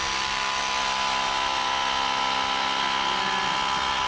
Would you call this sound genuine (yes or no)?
yes